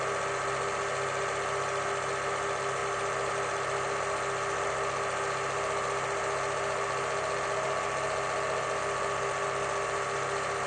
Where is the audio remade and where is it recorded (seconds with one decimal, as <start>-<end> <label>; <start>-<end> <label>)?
0.0-10.7 recorded